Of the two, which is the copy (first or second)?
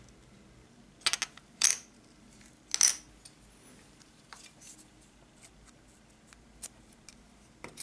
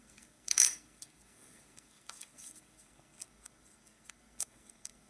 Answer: second